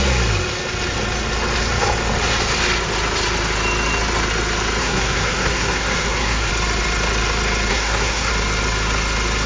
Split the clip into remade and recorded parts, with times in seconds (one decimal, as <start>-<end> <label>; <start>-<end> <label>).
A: 0.0-4.8 recorded; 4.8-6.5 remade; 6.5-7.7 recorded; 7.7-8.3 remade; 8.3-9.5 recorded